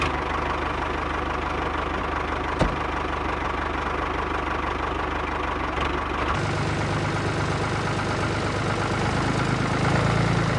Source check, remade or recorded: recorded